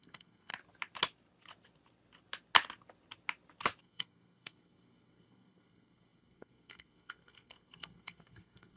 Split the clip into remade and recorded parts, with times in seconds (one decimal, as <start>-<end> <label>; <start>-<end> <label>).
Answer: 0.0-0.5 remade; 0.5-3.8 recorded; 3.8-8.8 remade